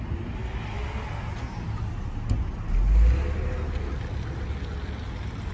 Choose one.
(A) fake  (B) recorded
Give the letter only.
B